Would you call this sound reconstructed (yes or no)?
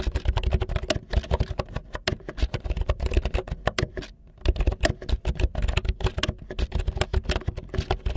no